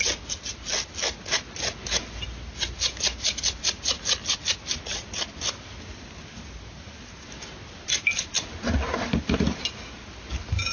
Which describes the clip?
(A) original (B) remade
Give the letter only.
A